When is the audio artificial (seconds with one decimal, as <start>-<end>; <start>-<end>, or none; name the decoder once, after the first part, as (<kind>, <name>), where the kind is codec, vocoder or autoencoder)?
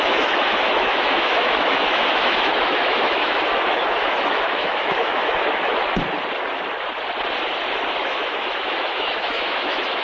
0.0-5.7 (autoencoder, DAC-VAE); 8.0-10.0